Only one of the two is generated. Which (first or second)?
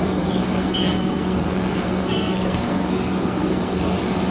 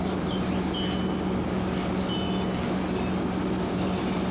first